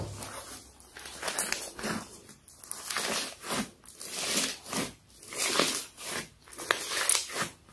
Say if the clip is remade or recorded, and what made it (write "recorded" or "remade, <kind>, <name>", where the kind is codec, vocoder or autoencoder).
recorded